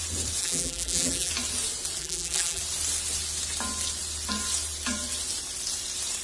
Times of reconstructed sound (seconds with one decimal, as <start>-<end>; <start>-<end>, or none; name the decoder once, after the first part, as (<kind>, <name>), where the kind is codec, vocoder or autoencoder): 0.4-1.3 (vocoder, BigVGAN v2); 2.0-2.6